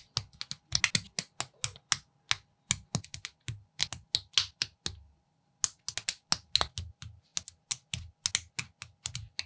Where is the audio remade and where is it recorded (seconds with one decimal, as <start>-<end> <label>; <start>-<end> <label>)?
0.0-9.5 recorded